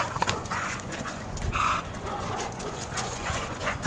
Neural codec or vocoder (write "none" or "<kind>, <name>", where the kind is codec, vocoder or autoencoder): vocoder, Vocos